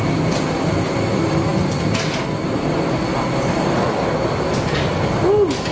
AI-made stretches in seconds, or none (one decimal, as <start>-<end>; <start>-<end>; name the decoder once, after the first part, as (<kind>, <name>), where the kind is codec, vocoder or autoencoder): none